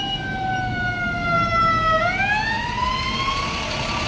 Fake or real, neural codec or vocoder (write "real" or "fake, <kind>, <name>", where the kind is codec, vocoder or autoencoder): real